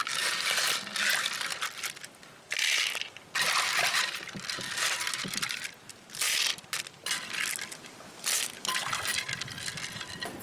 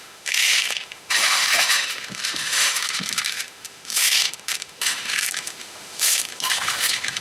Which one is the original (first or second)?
first